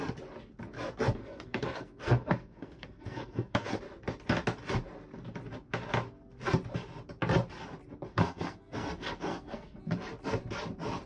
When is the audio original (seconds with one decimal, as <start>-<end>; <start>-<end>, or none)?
0.0-1.2; 3.8-8.1; 9.8-11.1